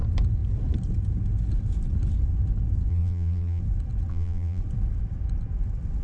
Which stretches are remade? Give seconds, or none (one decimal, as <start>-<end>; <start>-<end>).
2.9-3.6; 4.1-4.6

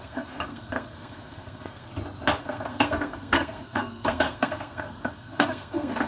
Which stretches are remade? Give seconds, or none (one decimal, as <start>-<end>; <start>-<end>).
0.0-1.9; 2.4-6.1

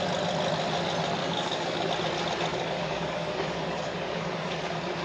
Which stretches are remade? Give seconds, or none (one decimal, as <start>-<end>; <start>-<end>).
1.2-1.9; 2.5-4.6

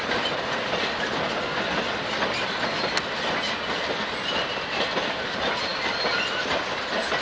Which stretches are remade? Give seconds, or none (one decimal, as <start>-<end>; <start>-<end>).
none

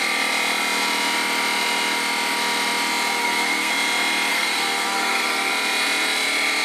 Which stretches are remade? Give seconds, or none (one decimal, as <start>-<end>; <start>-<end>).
3.2-3.7; 4.3-5.5

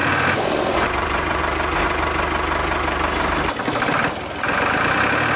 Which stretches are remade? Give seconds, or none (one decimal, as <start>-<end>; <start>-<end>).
0.0-1.4

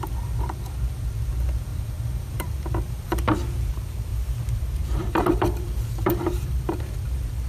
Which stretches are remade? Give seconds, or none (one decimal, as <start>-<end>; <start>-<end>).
1.7-3.2; 4.1-6.8